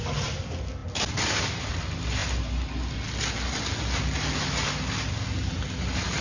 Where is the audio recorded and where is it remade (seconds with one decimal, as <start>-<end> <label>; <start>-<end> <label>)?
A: 0.0-6.2 recorded